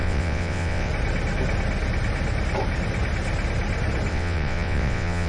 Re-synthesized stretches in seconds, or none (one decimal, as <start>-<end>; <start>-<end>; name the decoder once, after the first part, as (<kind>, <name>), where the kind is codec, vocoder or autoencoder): 0.0-0.9 (vocoder, WaveNeXt); 4.1-5.3